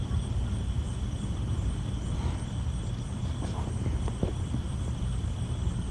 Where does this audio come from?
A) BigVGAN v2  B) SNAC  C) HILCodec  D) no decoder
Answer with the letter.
A